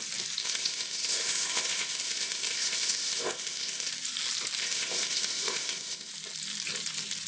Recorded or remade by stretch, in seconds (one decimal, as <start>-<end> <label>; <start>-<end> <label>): 0.0-0.4 recorded; 0.4-3.9 remade; 3.9-4.6 recorded; 4.6-6.1 remade; 6.1-7.3 recorded